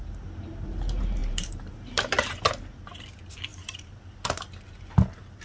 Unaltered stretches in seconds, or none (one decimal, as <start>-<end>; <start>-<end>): 0.0-1.2; 2.5-3.5; 4.1-5.4